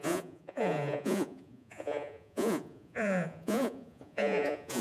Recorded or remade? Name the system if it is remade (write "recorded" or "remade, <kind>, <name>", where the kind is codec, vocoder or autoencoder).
remade, vocoder, Vocos